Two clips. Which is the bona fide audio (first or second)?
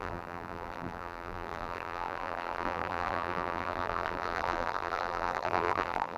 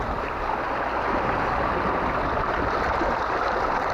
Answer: second